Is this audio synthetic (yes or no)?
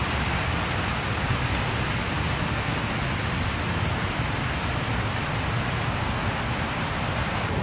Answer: no